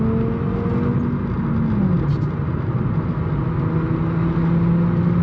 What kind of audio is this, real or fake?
real